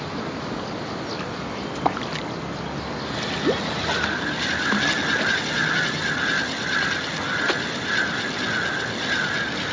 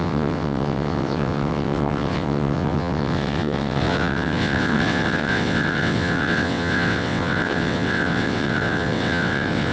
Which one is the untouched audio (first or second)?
first